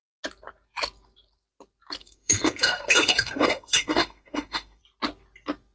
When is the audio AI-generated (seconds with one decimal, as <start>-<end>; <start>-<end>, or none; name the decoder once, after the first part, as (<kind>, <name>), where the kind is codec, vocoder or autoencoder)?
2.0-4.8 (autoencoder, DAC-VAE)